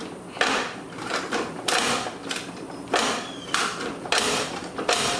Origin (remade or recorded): remade